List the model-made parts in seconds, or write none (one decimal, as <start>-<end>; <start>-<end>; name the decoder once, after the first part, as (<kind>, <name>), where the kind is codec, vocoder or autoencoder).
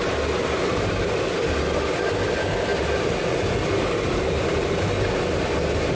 none